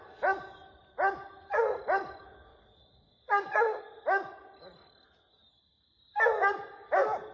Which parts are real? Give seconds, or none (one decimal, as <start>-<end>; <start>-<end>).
0.0-2.5; 3.8-7.3